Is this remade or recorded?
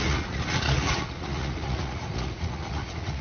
remade